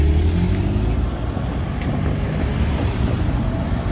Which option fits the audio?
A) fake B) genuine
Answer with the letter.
B